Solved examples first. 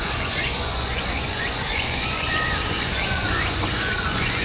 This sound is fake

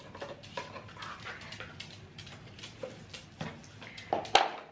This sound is real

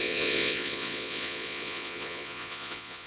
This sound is fake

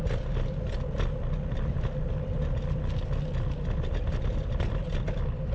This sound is real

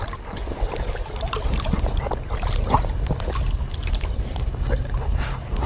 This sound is real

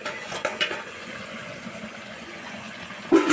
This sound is fake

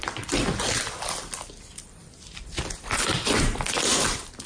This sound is real